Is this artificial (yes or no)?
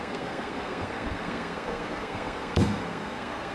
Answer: yes